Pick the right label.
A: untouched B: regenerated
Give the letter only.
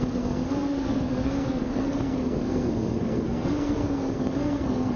B